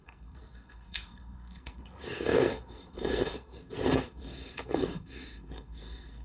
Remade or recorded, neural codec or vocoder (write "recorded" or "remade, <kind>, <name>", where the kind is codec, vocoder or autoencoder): remade, codec, SNAC